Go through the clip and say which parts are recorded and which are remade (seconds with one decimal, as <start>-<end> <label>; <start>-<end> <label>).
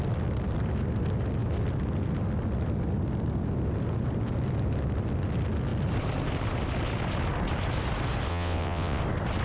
0.0-8.3 recorded; 8.3-9.0 remade; 9.0-9.4 recorded